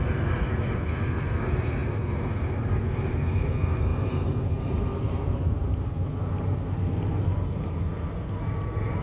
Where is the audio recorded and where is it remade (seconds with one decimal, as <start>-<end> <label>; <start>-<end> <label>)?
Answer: 0.0-9.0 recorded